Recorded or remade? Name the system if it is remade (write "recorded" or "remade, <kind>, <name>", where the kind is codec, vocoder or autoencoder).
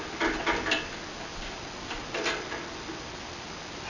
recorded